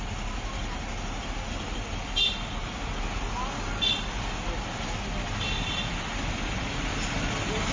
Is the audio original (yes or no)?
yes